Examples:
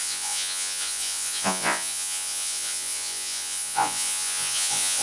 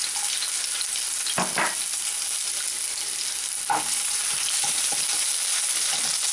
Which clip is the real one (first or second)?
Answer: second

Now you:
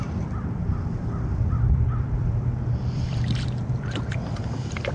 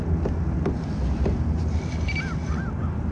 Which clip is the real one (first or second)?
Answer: second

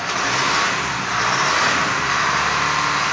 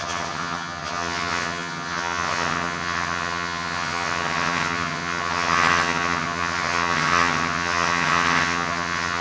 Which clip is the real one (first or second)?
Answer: first